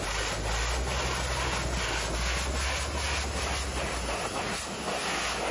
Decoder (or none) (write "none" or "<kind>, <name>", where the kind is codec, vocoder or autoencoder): none